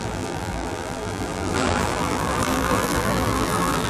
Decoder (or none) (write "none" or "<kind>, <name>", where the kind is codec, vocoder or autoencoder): vocoder, BigVGAN v2